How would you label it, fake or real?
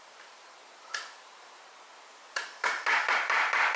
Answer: real